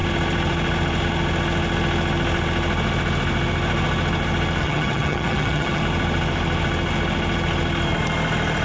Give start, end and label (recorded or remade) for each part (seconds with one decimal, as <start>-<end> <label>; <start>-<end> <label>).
0.0-4.6 recorded; 4.6-5.8 remade; 5.8-8.6 recorded